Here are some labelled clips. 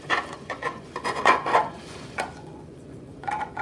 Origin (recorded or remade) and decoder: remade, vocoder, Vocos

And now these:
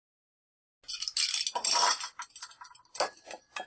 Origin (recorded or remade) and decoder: recorded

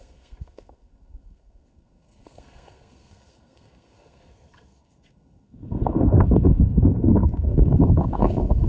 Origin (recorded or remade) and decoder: remade, codec, SNAC